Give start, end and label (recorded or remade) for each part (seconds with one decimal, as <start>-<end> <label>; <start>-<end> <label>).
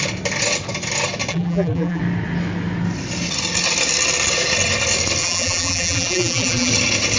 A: 0.0-1.3 recorded; 1.3-2.0 remade; 2.0-5.2 recorded; 5.2-6.7 remade; 6.7-7.2 recorded